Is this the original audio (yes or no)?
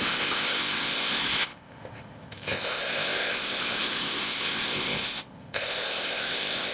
no